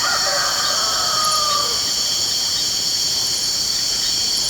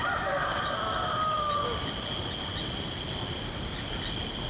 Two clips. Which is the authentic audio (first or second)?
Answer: second